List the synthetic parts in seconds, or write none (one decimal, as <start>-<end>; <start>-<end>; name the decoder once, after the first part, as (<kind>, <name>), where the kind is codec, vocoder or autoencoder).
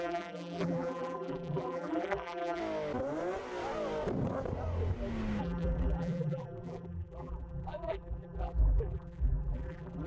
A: 0.0-2.6 (vocoder, BigVGAN v2); 5.4-10.1